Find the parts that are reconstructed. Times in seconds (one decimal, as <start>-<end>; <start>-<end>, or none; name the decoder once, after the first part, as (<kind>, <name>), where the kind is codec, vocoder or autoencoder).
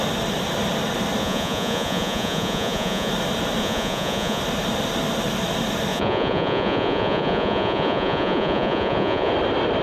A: 1.2-3.1 (vocoder, Vocos); 3.6-4.4; 5.9-9.3